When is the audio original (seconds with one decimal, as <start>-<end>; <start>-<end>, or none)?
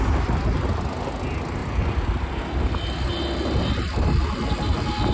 0.0-5.1